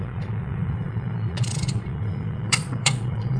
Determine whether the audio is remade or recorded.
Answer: remade